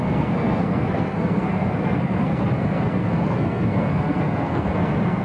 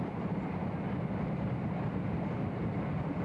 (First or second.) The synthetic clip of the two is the first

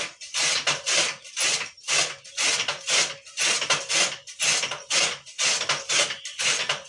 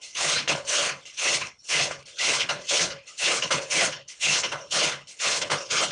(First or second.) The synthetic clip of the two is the second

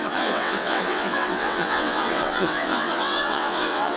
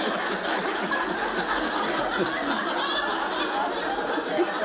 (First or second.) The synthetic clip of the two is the first